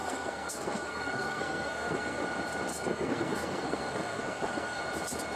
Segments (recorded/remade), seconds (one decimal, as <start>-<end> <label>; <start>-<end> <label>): 0.0-2.2 remade; 2.2-2.7 recorded; 2.7-4.8 remade; 4.8-5.4 recorded